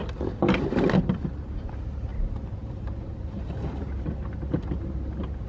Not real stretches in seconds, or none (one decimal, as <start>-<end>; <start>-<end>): 0.0-0.7; 2.1-3.8